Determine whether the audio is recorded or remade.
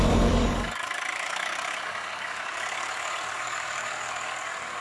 remade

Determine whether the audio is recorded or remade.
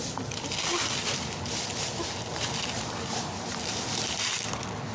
recorded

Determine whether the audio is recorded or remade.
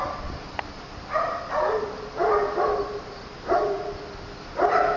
recorded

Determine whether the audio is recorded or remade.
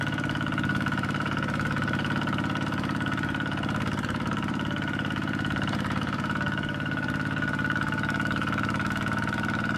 remade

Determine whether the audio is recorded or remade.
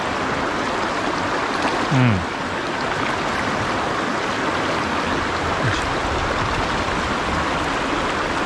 recorded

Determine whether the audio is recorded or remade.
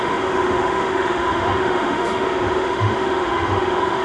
remade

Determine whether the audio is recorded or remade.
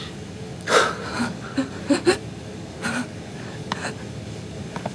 remade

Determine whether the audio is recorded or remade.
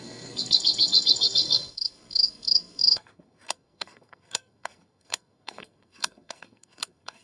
remade